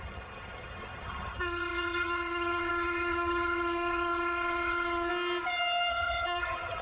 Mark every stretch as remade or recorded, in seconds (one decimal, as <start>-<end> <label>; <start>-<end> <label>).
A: 0.0-5.1 remade; 5.1-5.9 recorded; 5.9-6.8 remade